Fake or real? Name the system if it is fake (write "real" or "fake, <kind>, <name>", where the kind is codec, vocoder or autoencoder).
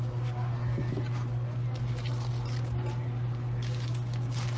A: real